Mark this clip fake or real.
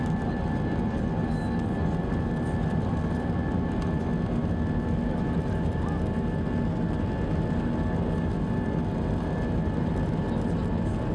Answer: real